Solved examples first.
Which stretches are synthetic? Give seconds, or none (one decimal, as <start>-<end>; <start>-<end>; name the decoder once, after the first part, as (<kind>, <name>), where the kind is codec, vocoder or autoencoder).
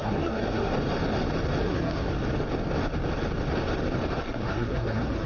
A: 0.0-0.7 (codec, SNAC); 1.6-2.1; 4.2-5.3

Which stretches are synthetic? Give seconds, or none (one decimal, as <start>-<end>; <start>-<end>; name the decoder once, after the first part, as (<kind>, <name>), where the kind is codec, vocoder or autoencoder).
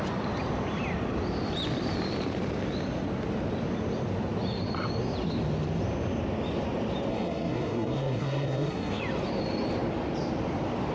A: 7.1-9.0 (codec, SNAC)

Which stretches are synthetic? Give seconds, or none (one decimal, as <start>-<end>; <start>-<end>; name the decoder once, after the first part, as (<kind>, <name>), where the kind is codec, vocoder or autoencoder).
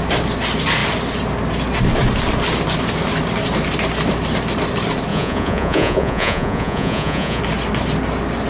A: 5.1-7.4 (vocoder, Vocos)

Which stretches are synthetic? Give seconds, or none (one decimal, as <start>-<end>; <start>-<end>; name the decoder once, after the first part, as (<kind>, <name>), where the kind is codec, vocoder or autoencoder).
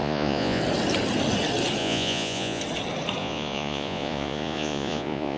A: 0.0-0.6 (vocoder, Vocos); 1.8-2.6; 3.2-5.4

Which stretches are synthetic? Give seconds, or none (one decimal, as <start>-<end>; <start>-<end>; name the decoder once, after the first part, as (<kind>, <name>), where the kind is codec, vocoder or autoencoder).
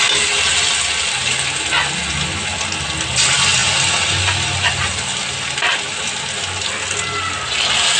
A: none